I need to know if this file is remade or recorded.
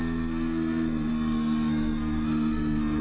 remade